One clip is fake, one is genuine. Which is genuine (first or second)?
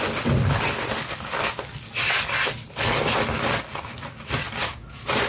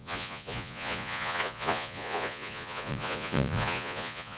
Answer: first